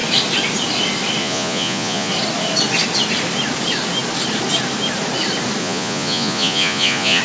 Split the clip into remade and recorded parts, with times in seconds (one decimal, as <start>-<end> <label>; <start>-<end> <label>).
0.0-1.2 recorded; 1.2-2.1 remade; 2.1-5.6 recorded; 5.6-7.2 remade